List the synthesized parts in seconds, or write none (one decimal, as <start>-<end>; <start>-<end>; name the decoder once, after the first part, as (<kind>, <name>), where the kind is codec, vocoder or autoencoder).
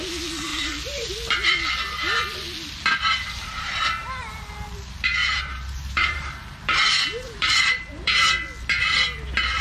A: 0.5-1.1 (vocoder, BigVGAN v2); 2.9-4.5; 5.2-8.3